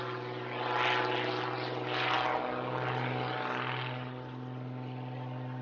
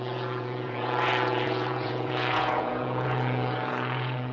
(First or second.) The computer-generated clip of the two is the second